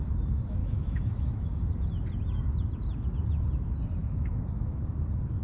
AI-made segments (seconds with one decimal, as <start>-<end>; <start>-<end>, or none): 0.6-1.6; 4.0-4.8